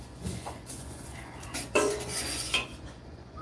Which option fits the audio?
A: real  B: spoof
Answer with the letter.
B